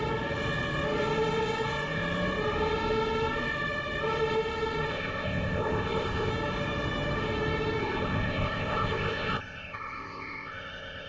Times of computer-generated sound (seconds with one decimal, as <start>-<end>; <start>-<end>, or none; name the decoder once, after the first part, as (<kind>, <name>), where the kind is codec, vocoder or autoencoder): 4.9-6.3 (codec, ZipCodec); 7.8-11.1